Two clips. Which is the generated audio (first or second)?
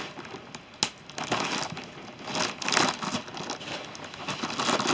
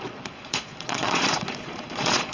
second